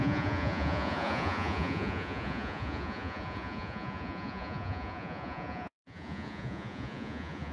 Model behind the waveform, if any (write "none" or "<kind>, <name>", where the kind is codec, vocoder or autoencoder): vocoder, Vocos